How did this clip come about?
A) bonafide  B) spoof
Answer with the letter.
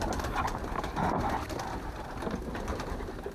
A